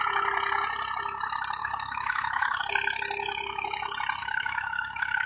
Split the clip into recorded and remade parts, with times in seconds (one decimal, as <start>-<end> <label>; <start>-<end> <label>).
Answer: 0.0-1.6 recorded; 1.6-2.6 remade; 2.6-4.2 recorded; 4.2-5.3 remade